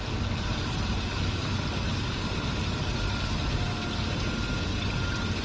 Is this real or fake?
real